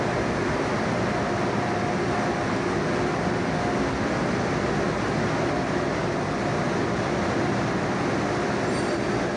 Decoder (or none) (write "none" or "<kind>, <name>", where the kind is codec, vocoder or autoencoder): none